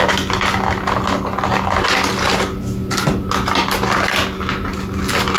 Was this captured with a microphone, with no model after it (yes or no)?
yes